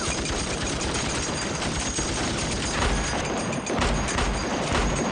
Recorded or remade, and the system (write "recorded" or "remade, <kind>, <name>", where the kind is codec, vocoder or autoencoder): recorded